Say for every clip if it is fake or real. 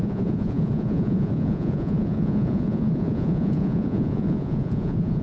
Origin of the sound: fake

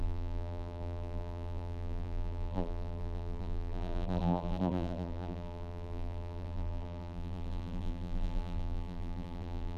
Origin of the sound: fake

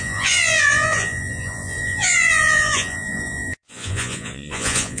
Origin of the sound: fake